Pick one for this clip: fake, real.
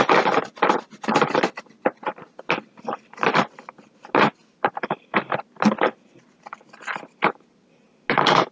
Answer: real